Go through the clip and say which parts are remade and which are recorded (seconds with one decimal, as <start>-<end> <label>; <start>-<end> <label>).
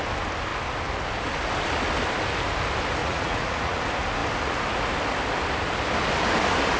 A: 0.0-3.0 recorded; 3.0-3.8 remade; 3.8-6.8 recorded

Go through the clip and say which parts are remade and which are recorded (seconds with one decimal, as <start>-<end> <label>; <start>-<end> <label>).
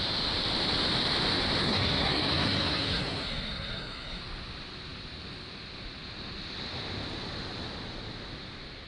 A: 0.0-1.6 recorded; 1.6-4.2 remade; 4.2-8.9 recorded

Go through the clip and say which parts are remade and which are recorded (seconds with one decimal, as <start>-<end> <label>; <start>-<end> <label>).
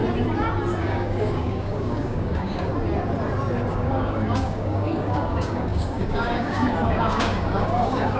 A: 0.0-0.8 recorded; 0.8-2.7 remade; 2.7-3.7 recorded; 3.7-8.2 remade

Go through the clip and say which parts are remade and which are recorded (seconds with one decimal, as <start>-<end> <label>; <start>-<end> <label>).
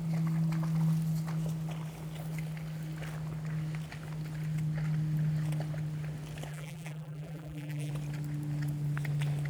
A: 0.0-6.5 recorded; 6.5-7.9 remade; 7.9-9.5 recorded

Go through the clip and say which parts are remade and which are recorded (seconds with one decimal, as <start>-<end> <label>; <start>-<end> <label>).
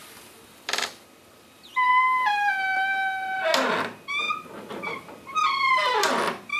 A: 0.0-1.9 remade; 1.9-4.2 recorded; 4.2-6.6 remade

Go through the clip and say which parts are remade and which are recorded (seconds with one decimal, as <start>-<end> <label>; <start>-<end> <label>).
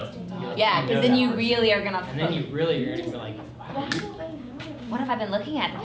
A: 0.0-0.9 remade; 0.9-4.3 recorded; 4.3-5.1 remade; 5.1-5.8 recorded